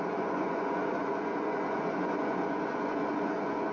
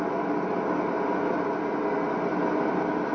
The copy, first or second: first